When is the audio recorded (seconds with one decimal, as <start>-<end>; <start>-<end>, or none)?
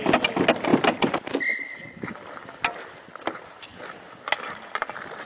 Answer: 0.0-5.3